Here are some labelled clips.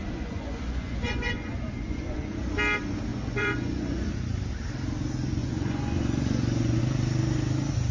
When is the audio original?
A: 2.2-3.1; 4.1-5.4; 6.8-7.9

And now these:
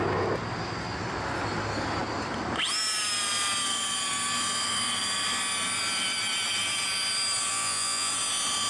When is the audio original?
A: 0.0-7.5; 8.1-8.7